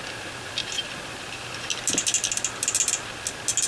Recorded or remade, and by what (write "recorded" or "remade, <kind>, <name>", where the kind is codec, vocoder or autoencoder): recorded